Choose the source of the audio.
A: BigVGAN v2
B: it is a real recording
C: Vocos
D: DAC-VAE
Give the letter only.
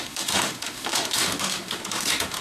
D